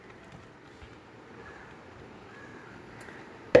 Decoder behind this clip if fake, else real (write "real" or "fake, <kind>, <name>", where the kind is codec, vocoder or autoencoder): real